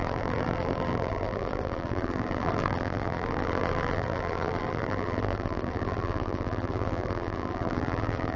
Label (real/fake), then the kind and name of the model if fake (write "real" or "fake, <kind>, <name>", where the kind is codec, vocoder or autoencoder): fake, vocoder, BigVGAN v2